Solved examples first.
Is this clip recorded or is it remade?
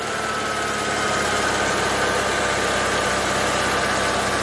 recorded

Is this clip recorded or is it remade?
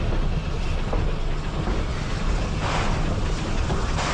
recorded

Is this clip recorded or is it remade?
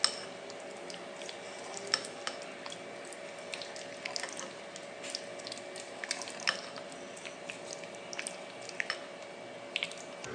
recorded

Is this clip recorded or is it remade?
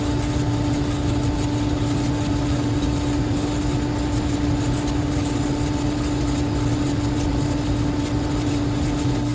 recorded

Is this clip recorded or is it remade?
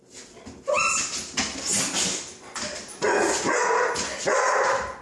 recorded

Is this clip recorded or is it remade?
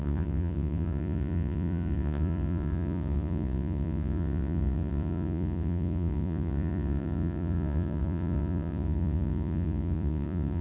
remade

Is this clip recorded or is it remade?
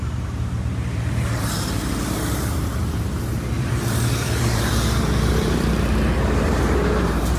remade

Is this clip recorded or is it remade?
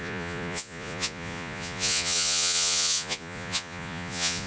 remade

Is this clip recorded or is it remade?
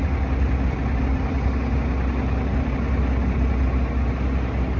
recorded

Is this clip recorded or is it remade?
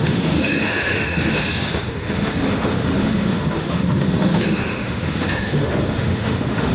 remade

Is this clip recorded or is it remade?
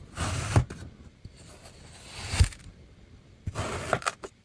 recorded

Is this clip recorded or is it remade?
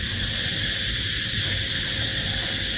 recorded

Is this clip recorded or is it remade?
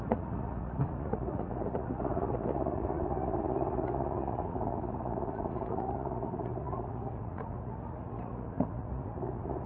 remade